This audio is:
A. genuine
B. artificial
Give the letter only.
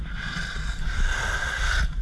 A